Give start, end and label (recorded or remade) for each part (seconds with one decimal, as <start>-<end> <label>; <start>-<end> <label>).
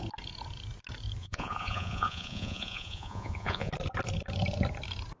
0.0-1.2 recorded; 1.2-3.7 remade; 3.7-5.2 recorded